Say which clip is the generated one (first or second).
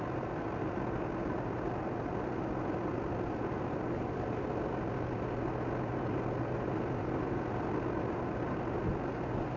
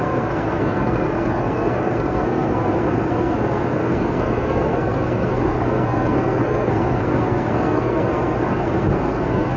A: second